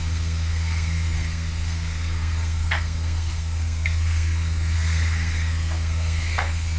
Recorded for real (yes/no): no